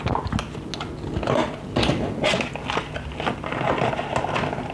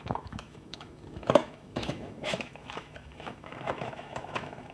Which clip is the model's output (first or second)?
second